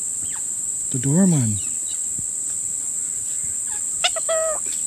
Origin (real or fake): real